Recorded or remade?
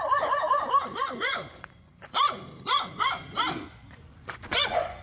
remade